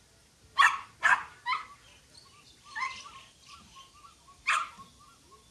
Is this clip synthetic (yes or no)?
no